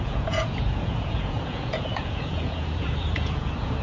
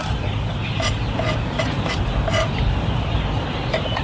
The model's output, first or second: first